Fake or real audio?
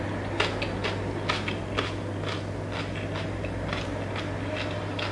real